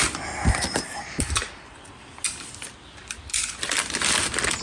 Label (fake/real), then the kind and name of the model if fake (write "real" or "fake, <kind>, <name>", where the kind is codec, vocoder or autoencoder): real